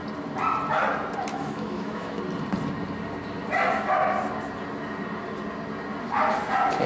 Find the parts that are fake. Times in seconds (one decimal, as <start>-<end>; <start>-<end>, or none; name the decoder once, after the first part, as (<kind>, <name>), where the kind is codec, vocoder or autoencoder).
1.3-2.2 (autoencoder, DAC-VAE)